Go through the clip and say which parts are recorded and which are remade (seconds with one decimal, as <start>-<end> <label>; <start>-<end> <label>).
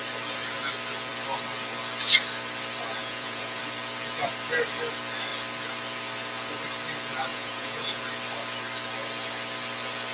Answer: 0.0-3.0 recorded; 3.0-3.6 remade; 3.6-7.3 recorded; 7.3-8.0 remade; 8.0-10.1 recorded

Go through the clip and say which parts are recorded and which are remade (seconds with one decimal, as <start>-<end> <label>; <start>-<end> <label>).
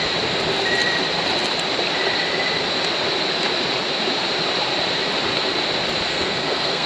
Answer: 0.0-6.1 recorded; 6.1-6.9 remade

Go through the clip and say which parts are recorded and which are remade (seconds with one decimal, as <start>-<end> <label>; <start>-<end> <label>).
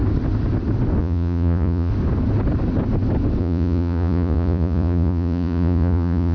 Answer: 0.0-1.0 recorded; 1.0-1.9 remade; 1.9-3.4 recorded; 3.4-6.3 remade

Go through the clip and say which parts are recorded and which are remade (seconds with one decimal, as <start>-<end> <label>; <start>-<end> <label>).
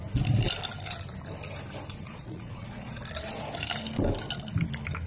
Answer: 0.0-2.1 recorded; 2.1-3.0 remade; 3.0-5.1 recorded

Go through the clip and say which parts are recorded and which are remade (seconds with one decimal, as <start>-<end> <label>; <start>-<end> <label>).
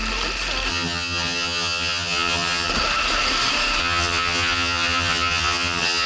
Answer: 0.0-0.7 recorded; 0.7-2.7 remade; 2.7-3.8 recorded; 3.8-6.1 remade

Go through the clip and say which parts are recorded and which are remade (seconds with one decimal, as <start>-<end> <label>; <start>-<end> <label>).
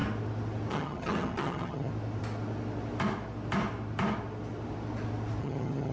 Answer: 0.0-0.7 recorded; 0.7-1.9 remade; 1.9-5.4 recorded; 5.4-5.9 remade